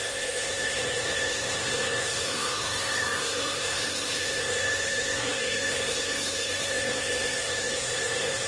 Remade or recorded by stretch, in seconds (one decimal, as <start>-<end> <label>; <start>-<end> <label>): 0.0-8.5 remade